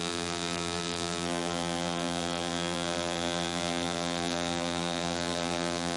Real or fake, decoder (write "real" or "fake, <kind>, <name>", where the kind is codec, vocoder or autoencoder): fake, vocoder, BigVGAN v2